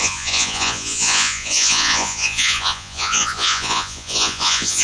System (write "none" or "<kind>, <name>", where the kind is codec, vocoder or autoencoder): vocoder, Vocos